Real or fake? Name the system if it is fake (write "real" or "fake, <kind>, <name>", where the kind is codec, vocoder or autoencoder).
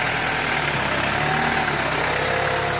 real